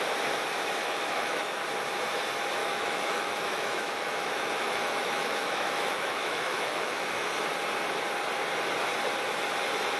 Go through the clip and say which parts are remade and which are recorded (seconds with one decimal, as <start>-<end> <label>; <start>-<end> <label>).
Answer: 0.0-0.8 recorded; 0.8-1.6 remade; 1.6-2.6 recorded; 2.6-7.2 remade; 7.2-10.0 recorded